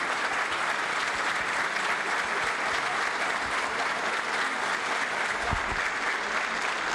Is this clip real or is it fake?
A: real